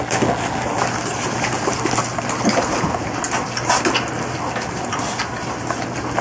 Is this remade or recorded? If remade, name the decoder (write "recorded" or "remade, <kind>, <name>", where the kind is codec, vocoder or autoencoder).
recorded